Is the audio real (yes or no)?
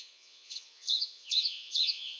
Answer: no